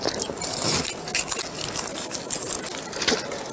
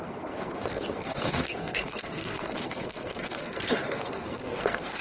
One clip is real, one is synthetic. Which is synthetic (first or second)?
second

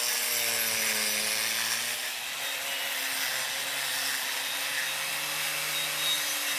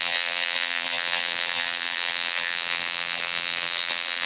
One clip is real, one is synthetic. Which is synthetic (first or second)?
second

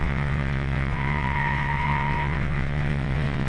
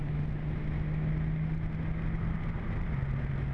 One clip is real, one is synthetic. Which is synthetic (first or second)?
first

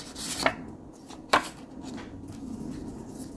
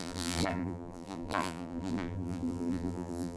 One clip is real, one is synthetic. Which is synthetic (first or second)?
second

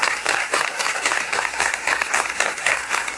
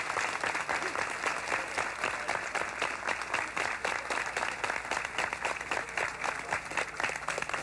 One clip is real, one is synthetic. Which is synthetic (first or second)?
first